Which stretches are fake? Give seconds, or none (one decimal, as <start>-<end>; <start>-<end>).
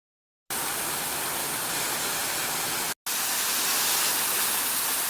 none